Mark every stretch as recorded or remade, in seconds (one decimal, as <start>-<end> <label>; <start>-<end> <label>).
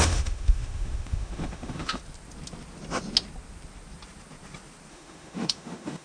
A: 0.0-2.0 remade; 2.0-4.9 recorded; 4.9-6.0 remade